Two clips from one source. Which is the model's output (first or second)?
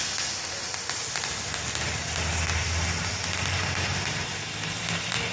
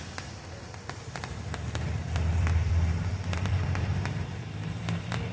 second